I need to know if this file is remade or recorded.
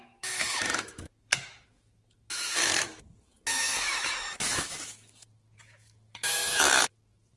remade